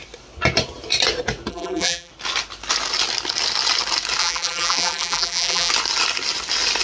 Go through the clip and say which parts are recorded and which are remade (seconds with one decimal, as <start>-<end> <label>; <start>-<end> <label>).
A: 0.0-1.5 recorded; 1.5-2.1 remade; 2.1-4.2 recorded; 4.2-5.7 remade; 5.7-6.8 recorded